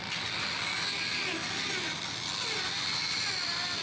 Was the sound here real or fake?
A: real